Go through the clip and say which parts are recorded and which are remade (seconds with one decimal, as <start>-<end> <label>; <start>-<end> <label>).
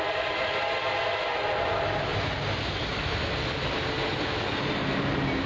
0.0-5.5 recorded